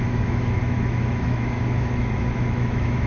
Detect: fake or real fake